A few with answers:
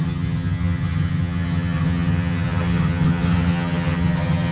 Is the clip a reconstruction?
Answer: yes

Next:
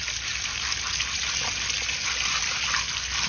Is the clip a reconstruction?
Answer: no